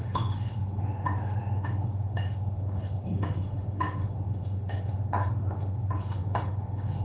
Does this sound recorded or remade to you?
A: remade